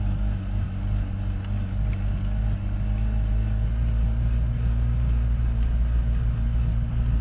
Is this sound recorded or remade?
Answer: recorded